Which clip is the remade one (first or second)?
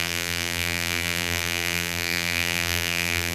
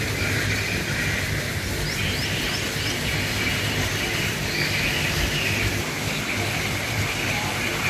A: first